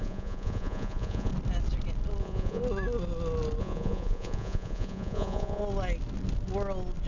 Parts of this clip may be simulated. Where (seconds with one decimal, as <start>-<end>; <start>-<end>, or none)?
0.0-1.3; 2.2-2.6; 3.6-5.6